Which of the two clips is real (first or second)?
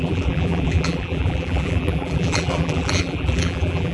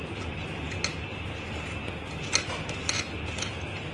second